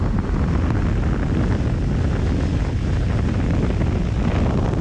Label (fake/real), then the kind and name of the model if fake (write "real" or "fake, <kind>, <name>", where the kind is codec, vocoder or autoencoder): real